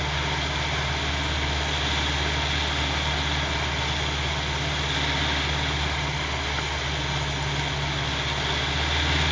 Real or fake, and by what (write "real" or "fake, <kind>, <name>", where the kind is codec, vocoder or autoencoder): real